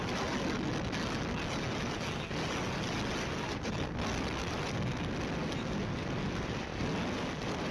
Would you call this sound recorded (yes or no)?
yes